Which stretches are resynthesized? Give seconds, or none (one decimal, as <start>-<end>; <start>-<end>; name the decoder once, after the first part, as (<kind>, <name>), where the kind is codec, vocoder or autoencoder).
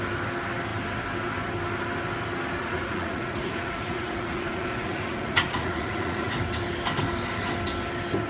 2.6-6.3 (vocoder, Vocos)